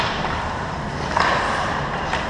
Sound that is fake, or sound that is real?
fake